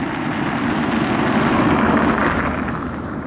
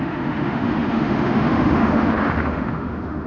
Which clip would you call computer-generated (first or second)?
second